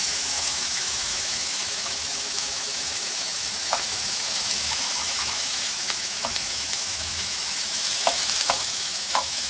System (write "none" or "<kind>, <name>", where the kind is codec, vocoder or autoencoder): autoencoder, DAC-VAE